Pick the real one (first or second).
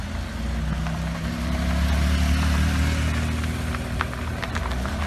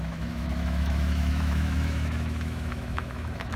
first